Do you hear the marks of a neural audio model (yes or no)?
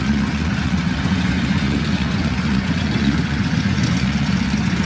yes